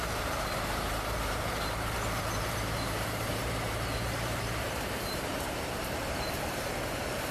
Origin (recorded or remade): remade